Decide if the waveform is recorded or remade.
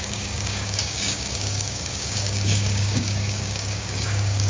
remade